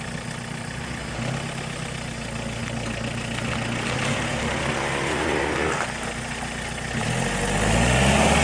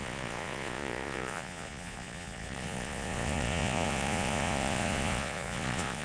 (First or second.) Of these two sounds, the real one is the first